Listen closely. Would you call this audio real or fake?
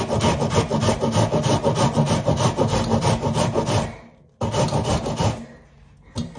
real